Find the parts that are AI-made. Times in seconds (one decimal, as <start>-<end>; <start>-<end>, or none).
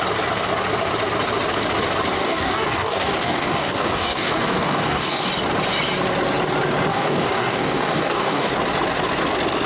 2.2-5.3; 6.9-8.5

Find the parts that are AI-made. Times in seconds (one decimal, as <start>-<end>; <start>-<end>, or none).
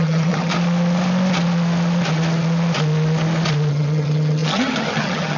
0.0-0.5; 3.7-5.4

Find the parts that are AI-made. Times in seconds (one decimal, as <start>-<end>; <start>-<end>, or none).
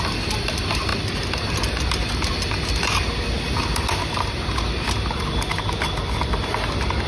none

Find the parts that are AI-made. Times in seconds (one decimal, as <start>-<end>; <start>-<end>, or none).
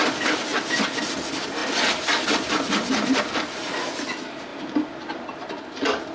0.5-1.1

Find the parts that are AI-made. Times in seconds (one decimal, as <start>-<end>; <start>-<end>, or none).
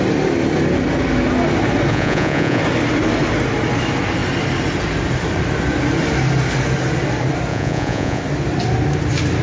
1.9-2.6; 7.5-8.2